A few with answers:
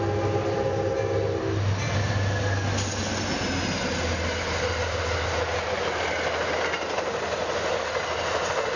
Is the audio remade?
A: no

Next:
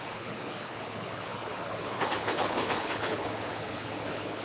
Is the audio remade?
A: yes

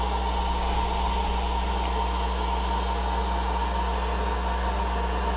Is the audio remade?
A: no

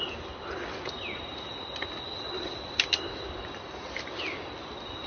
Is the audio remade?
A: no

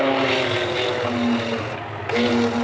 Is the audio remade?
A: no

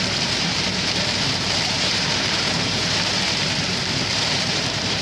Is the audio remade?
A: yes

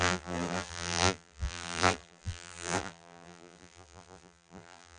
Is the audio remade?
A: yes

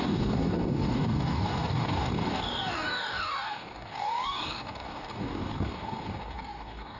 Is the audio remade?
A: yes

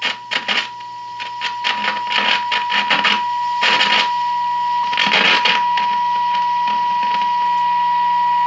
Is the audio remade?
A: no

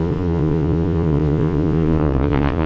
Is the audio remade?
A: yes